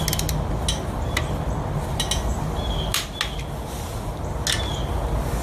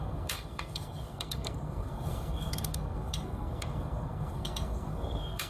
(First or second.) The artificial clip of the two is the second